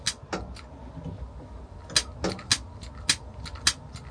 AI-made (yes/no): no